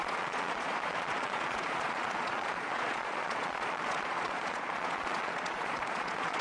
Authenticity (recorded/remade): remade